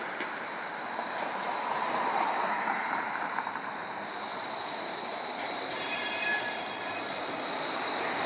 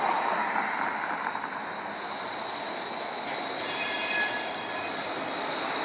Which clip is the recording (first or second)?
second